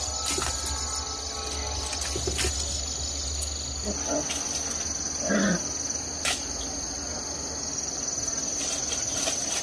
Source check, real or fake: real